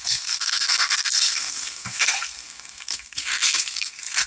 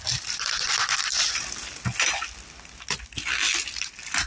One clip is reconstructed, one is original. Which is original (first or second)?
second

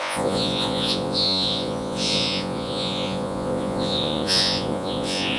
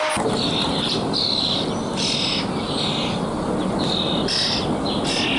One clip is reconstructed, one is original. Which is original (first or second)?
second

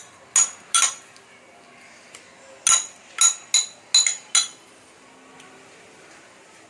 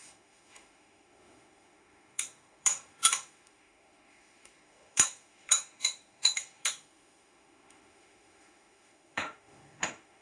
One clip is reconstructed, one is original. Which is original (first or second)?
first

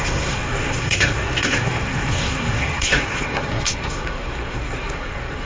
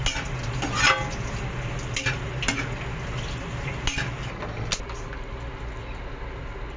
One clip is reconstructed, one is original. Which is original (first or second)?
second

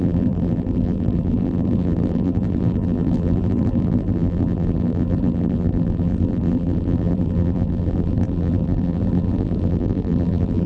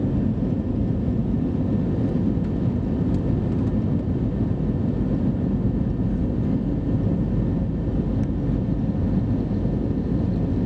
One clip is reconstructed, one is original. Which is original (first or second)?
second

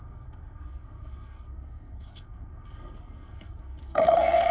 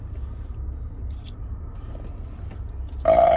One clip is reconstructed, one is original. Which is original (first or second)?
second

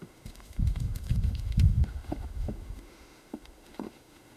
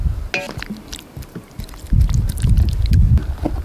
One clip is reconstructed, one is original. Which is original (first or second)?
second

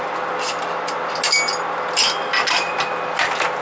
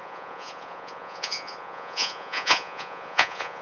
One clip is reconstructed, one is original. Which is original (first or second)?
first